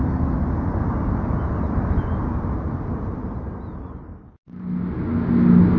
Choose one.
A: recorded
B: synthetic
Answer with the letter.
A